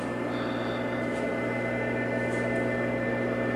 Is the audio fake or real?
real